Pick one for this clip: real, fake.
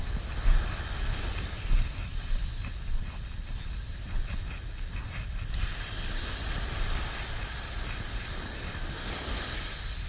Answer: real